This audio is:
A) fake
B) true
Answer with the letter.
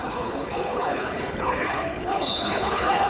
A